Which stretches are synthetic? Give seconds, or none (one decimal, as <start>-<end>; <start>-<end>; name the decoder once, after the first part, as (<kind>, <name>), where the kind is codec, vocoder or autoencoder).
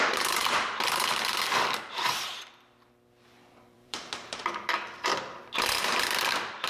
0.0-6.7 (vocoder, BigVGAN v2)